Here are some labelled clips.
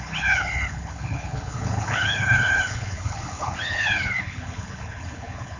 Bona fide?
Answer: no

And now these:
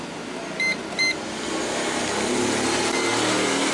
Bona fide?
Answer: yes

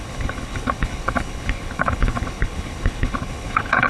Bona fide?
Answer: no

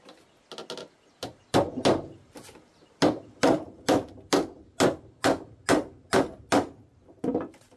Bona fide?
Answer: yes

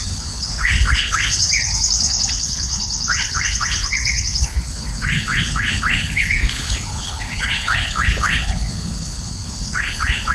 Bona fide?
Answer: no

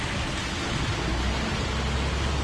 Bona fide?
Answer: yes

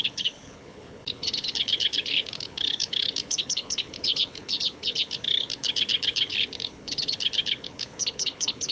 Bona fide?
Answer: no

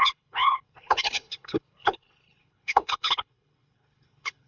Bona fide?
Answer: no